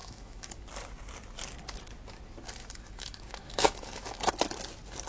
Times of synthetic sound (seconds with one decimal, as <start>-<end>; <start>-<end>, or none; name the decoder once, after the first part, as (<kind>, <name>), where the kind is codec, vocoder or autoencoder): 0.0-0.5 (autoencoder, DAC-VAE); 2.6-4.3